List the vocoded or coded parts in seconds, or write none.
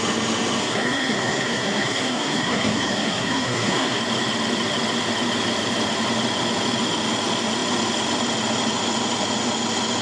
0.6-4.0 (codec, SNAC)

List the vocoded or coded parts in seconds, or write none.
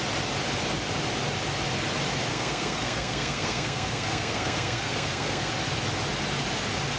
2.3-5.5 (codec, SNAC)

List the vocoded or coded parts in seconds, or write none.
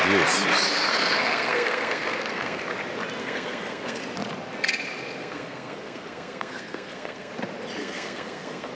0.9-2.6 (codec, SNAC); 3.2-4.0; 5.2-7.3; 7.8-8.7